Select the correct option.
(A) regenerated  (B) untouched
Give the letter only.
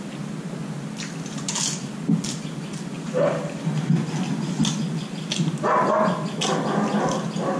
B